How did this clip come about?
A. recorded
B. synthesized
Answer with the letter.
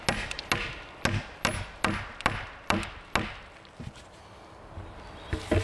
A